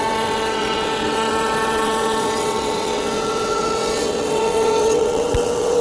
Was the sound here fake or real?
fake